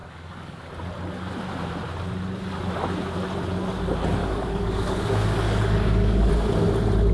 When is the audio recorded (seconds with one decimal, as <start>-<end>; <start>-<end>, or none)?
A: 0.6-4.2; 6.3-7.1